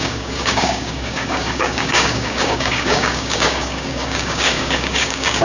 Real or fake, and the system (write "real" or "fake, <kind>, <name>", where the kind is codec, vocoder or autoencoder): fake, codec, DAC